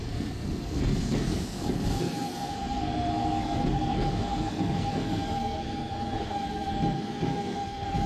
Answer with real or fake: fake